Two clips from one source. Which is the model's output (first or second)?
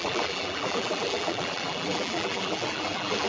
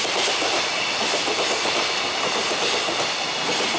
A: first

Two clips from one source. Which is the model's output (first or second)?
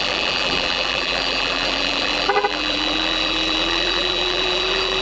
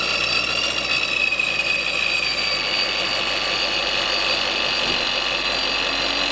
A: first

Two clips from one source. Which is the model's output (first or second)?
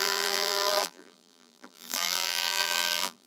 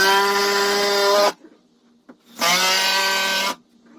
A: first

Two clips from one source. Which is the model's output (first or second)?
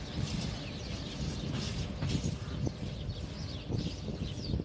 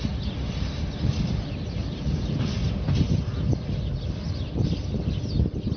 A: second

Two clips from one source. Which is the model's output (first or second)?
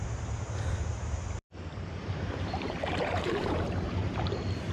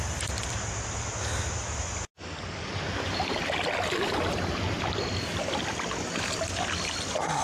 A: first